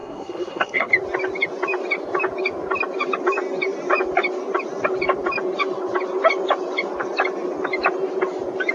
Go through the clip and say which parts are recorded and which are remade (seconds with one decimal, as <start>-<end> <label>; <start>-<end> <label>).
0.0-0.9 remade; 0.9-8.7 recorded